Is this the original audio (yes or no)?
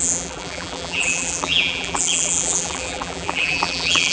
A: no